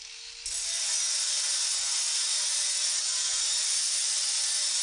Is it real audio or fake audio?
real